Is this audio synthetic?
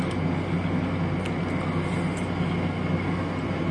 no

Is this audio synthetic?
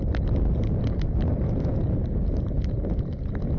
no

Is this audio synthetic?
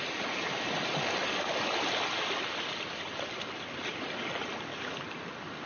no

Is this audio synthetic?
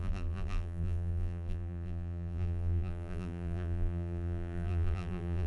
yes